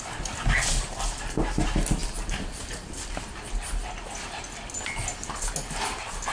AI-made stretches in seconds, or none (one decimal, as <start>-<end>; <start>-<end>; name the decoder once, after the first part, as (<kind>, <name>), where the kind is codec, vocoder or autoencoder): none